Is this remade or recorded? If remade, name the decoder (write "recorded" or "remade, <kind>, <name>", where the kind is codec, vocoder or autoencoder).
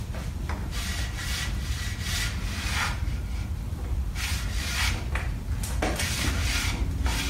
recorded